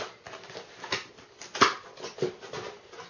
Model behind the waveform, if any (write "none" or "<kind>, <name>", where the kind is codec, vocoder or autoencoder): none